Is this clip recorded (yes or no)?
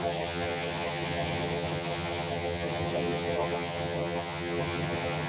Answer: no